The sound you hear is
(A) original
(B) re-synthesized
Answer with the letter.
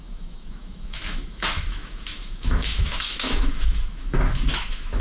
B